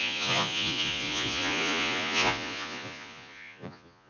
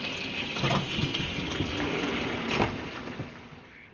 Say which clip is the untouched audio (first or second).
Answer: second